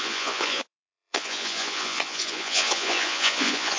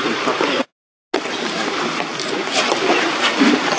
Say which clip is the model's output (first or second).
first